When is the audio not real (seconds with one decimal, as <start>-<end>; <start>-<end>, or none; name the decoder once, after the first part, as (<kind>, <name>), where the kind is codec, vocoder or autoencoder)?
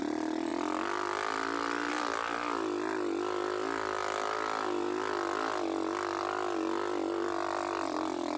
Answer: none